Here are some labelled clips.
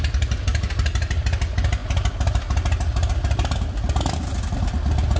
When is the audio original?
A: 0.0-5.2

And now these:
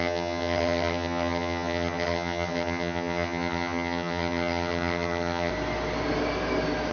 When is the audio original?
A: 5.5-6.9

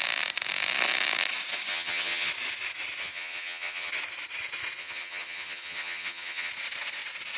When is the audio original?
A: 0.0-1.7; 2.3-3.0; 3.9-4.8; 6.5-7.4

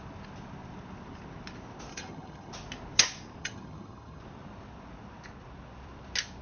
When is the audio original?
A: 0.0-1.9; 2.5-3.4; 4.2-6.4

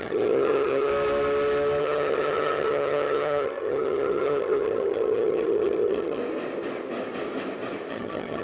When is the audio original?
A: 0.9-1.8; 6.2-7.9